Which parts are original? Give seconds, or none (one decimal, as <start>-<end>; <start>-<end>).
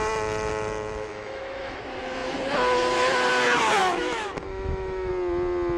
0.0-1.1; 1.8-3.8; 5.1-5.8